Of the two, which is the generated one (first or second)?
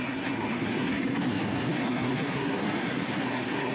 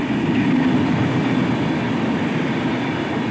first